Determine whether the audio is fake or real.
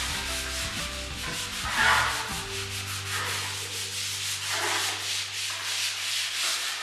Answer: real